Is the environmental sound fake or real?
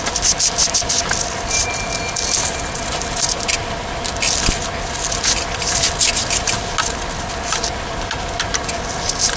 real